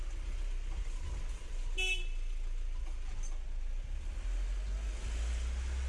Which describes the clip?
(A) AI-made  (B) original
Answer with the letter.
B